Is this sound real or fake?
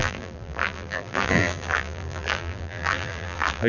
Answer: fake